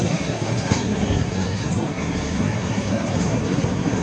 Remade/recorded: remade